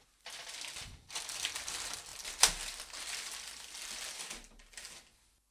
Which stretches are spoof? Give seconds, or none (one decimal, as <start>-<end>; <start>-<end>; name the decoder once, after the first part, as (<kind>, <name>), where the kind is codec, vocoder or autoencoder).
none